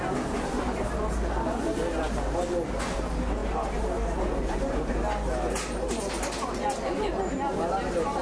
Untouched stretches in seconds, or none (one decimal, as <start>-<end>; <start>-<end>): 0.0-8.2